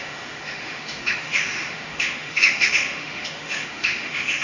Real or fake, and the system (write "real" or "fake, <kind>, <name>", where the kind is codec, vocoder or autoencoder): fake, autoencoder, DAC-VAE